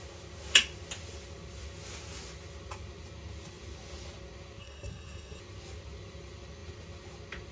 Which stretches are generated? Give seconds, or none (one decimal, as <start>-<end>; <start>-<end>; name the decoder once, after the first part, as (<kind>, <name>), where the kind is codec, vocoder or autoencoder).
4.6-5.4 (codec, SNAC)